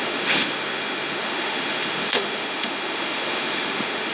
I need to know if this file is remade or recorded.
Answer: remade